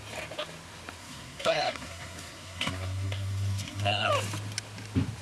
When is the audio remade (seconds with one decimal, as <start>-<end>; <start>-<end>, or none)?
1.0-4.1